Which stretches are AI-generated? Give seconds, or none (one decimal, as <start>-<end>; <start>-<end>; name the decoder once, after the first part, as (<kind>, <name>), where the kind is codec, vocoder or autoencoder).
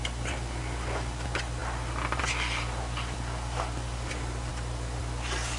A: none